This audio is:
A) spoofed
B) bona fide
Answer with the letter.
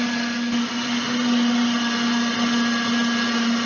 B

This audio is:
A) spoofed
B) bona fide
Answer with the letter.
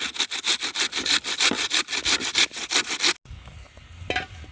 B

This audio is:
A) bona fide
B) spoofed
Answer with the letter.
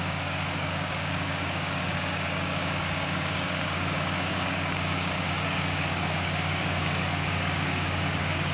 B